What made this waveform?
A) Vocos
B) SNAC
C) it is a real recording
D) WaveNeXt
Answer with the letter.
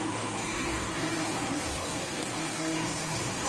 B